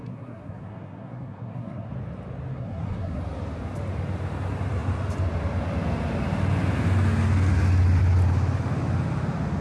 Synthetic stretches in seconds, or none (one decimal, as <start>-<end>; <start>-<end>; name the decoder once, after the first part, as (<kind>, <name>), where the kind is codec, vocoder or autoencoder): 0.0-1.9 (codec, SNAC); 2.5-3.2

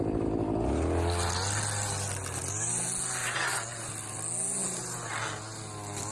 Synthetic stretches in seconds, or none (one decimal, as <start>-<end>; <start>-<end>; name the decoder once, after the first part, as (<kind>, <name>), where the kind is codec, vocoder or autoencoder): 3.2-3.9 (vocoder, Vocos)

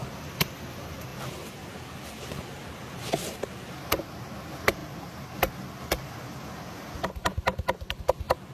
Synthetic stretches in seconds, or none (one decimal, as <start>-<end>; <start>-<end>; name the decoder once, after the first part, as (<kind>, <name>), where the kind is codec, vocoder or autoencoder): none

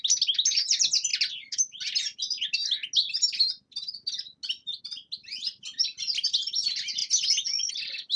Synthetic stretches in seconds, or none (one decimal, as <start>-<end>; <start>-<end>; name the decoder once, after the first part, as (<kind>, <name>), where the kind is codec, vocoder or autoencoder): none

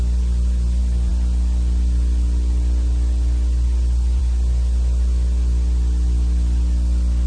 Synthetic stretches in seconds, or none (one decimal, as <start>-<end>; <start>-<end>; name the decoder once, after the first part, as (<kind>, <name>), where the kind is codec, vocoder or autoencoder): none